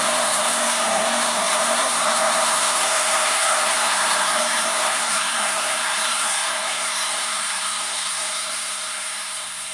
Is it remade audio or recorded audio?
remade